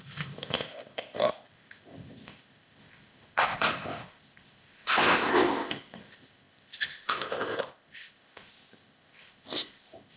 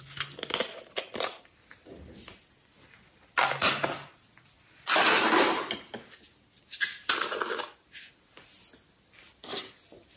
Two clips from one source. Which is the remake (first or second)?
first